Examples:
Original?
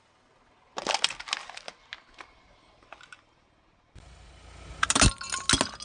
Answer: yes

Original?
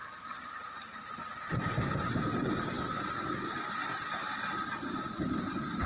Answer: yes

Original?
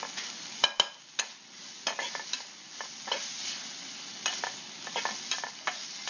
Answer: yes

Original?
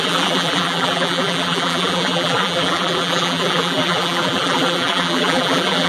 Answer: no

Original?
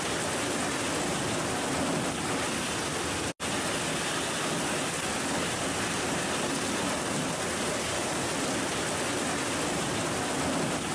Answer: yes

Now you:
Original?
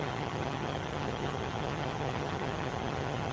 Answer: no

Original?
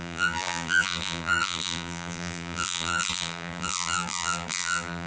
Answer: no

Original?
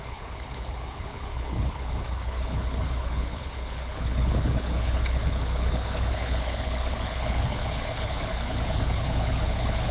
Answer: no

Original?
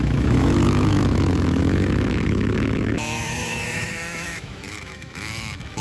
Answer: no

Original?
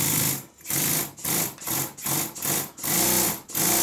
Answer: yes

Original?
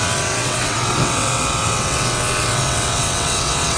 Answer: no